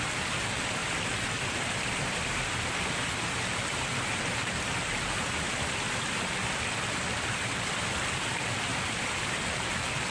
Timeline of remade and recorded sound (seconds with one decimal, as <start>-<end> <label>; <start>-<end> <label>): 0.0-0.8 recorded; 0.8-2.5 remade; 2.5-8.7 recorded; 8.7-9.4 remade; 9.4-10.1 recorded